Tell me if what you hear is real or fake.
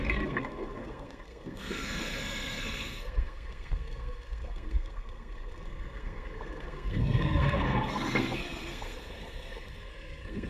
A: fake